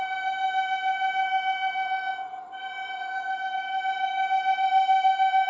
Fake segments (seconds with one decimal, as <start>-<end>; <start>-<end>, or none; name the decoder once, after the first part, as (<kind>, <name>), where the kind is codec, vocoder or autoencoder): none